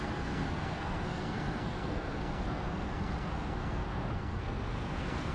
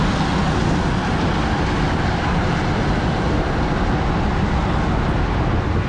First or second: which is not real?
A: first